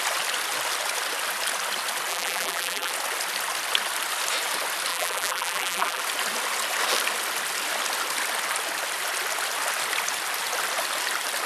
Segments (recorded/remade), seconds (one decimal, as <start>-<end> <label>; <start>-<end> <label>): 0.0-2.1 recorded; 2.1-2.9 remade; 2.9-4.9 recorded; 4.9-6.0 remade; 6.0-11.5 recorded